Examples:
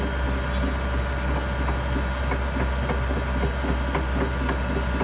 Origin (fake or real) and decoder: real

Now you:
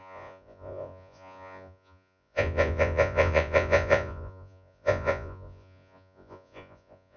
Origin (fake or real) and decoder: fake, vocoder, Vocos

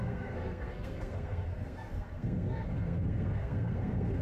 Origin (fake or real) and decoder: fake, codec, SNAC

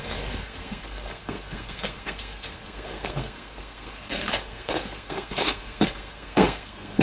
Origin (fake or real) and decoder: fake, codec, SNAC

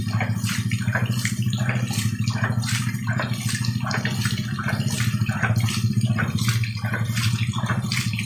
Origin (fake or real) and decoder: real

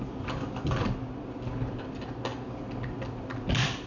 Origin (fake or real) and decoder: real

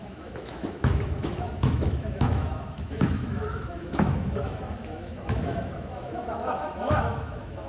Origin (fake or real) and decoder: fake, autoencoder, DAC-VAE